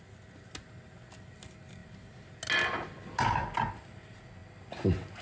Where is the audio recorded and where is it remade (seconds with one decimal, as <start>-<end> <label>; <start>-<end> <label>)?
0.0-5.2 recorded